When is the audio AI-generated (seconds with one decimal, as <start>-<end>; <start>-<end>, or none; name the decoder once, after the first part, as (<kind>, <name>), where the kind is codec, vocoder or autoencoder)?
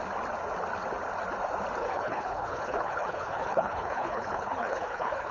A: 1.8-5.3 (codec, HILCodec)